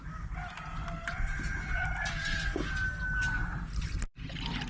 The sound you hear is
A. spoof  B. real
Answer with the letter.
B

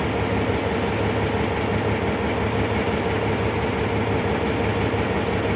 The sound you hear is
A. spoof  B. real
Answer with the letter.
B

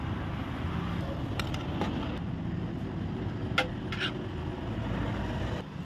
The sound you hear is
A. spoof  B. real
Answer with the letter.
B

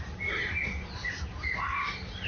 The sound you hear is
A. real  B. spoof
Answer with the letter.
A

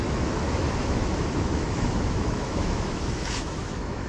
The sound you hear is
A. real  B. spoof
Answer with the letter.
B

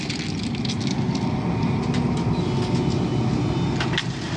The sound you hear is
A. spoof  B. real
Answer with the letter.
B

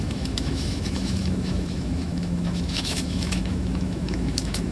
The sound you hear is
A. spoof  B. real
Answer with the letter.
A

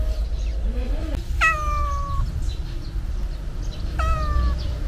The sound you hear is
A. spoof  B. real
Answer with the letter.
B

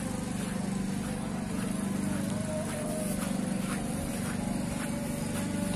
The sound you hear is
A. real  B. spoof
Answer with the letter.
A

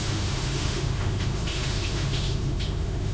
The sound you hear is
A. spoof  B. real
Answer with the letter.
A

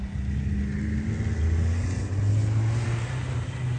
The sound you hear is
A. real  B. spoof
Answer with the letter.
A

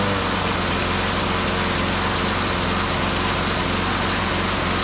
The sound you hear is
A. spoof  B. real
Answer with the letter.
B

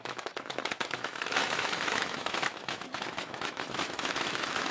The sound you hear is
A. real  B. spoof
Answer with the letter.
B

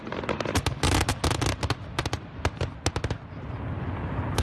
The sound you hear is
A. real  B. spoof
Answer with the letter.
A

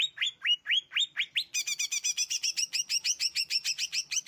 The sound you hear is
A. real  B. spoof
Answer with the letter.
A